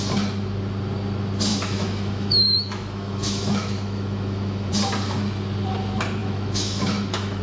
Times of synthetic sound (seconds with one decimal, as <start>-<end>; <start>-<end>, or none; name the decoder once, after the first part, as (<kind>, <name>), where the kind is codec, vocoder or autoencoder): 1.5-4.7 (autoencoder, DAC-VAE); 6.2-7.4